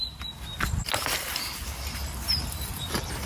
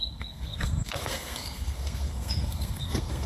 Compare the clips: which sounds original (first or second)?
first